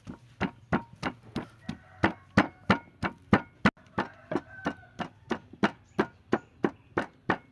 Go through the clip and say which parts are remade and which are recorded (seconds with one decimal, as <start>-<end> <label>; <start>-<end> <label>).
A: 0.0-7.5 recorded